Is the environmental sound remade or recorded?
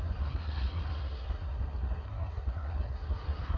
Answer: remade